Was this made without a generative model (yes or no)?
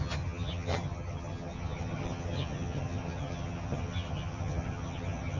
no